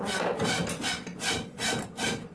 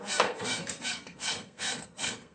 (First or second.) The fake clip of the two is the second